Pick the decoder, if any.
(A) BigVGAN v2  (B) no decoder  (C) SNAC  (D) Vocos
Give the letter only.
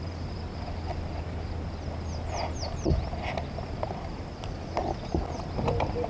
B